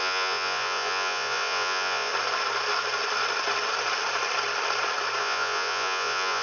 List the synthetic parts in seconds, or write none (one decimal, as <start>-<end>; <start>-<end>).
0.0-2.1; 5.2-6.4